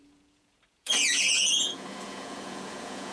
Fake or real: fake